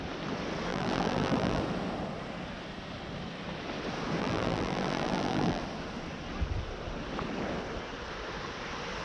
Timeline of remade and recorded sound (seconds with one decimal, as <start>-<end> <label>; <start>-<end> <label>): 0.0-0.7 recorded; 0.7-1.6 remade; 1.6-4.2 recorded; 4.2-5.6 remade; 5.6-9.0 recorded